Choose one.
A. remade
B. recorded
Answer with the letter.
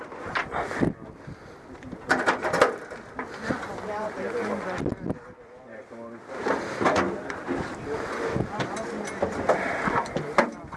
B